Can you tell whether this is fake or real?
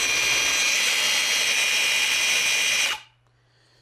real